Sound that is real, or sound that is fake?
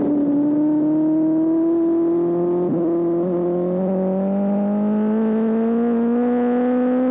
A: real